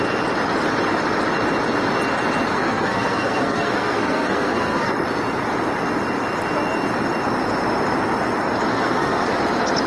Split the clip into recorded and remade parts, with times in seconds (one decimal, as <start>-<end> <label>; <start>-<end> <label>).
0.0-2.5 recorded; 2.5-4.9 remade; 4.9-8.7 recorded; 8.7-9.3 remade; 9.3-9.9 recorded